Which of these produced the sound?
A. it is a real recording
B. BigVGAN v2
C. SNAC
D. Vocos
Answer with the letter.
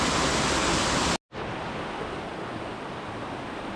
A